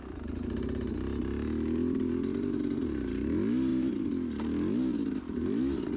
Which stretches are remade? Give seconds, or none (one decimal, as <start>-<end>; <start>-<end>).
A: none